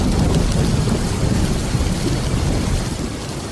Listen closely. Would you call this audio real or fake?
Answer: real